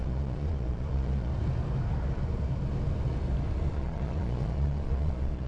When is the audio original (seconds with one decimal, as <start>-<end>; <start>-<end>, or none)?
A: 1.3-3.7